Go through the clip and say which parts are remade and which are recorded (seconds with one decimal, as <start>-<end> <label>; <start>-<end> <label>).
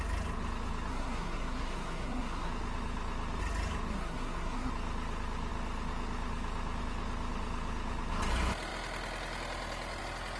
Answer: 0.0-0.9 recorded; 0.9-2.5 remade; 2.5-3.9 recorded; 3.9-4.7 remade; 4.7-10.4 recorded